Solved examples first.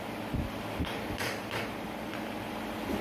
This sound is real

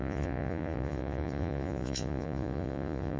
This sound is fake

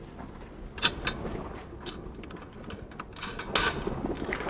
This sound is real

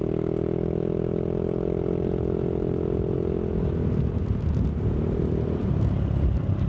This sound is real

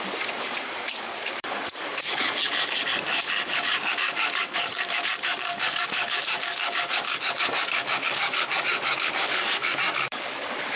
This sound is fake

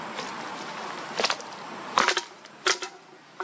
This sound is real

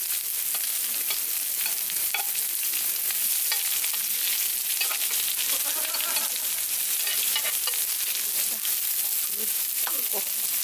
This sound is real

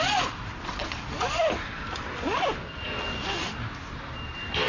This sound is real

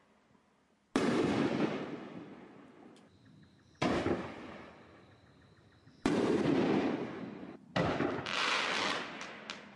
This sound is real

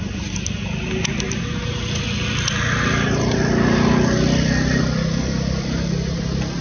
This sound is real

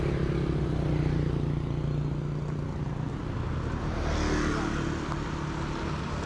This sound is real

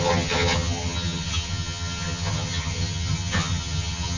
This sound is fake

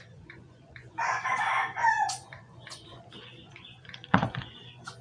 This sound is fake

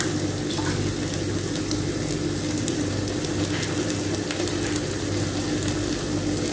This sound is real